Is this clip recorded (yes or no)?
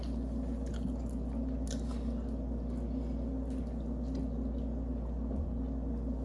yes